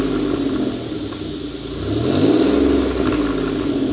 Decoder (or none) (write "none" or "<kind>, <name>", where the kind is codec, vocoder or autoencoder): none